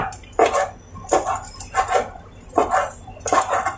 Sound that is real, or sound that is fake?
real